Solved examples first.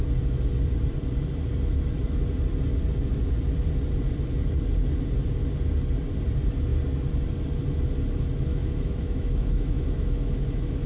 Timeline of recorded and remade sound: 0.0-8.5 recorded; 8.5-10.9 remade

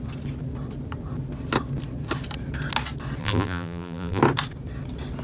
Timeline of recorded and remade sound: 0.0-3.2 recorded; 3.2-4.2 remade; 4.2-5.2 recorded

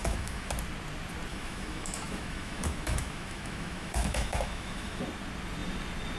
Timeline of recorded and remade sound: 0.0-0.5 remade; 0.5-1.3 recorded; 1.3-5.0 remade; 5.0-6.2 recorded

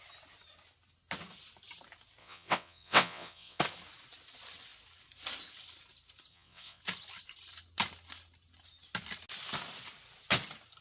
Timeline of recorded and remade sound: 0.0-2.2 recorded; 2.2-3.6 remade; 3.6-6.3 recorded; 6.3-6.8 remade; 6.8-10.8 recorded

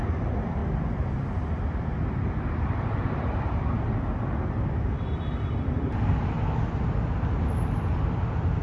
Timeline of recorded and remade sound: 0.0-8.6 recorded

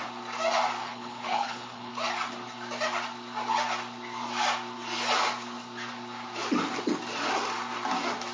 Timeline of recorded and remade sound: 0.0-0.8 recorded; 0.8-1.9 remade; 1.9-8.3 recorded

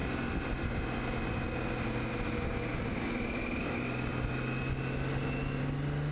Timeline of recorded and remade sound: 0.0-6.1 recorded

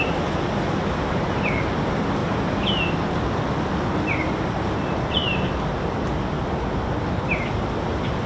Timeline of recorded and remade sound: 0.0-8.3 recorded